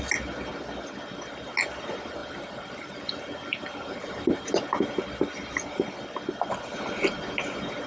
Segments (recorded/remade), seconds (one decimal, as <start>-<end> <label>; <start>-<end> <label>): 0.0-2.2 recorded; 2.2-4.4 remade; 4.4-7.9 recorded